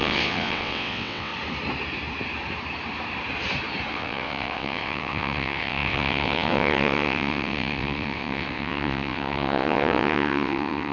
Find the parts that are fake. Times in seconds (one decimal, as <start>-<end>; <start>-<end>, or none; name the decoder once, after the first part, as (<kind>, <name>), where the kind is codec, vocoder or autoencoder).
0.0-1.3 (vocoder, WaveNeXt); 3.9-10.9

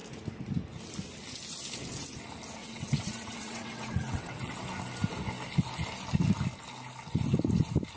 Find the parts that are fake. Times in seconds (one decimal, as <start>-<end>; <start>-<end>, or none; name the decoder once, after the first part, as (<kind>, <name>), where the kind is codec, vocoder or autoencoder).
2.6-4.6 (vocoder, WaveNeXt)

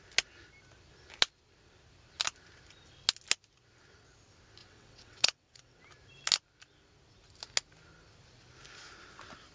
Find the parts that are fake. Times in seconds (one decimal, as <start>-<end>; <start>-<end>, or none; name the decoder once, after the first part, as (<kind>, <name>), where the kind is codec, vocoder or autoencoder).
4.6-5.8 (vocoder, WaveNeXt)

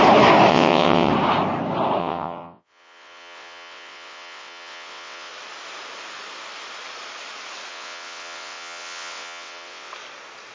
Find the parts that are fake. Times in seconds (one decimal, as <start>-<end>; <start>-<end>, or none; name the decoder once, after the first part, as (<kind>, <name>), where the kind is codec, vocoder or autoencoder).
0.5-1.1 (vocoder, WaveNeXt); 2.0-5.3; 7.7-9.9